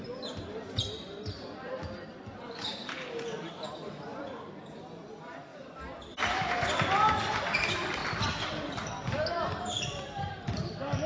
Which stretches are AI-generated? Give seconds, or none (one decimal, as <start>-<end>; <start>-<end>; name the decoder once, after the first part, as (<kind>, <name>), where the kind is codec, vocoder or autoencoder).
none